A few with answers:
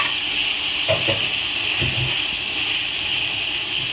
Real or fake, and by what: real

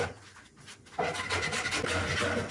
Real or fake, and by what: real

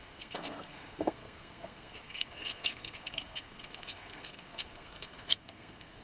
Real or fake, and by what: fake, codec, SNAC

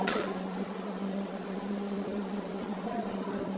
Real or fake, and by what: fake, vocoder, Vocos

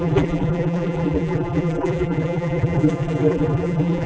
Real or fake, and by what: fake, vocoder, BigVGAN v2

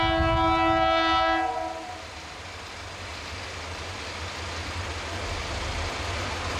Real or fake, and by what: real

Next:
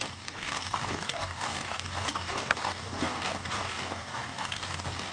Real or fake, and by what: fake, codec, DAC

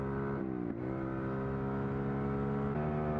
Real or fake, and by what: real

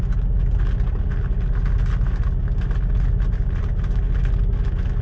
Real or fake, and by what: real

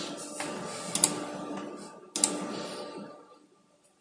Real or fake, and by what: real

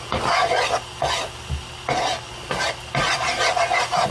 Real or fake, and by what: real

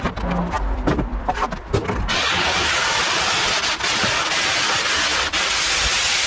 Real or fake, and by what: real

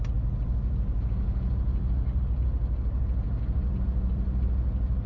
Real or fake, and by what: real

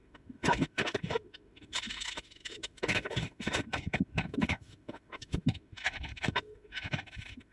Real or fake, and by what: fake, autoencoder, DAC-VAE